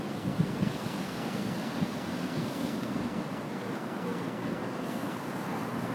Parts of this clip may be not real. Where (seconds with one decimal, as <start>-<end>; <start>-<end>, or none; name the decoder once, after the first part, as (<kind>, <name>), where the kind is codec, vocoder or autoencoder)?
0.0-5.9 (codec, SNAC)